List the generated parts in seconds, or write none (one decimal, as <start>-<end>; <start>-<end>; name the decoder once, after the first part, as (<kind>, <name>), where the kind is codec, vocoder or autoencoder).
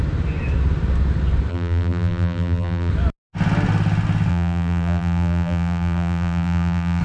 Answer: 1.5-2.9 (vocoder, BigVGAN v2); 4.3-7.0